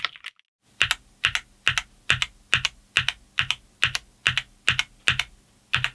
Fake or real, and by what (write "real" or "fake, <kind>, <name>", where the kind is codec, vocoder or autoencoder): real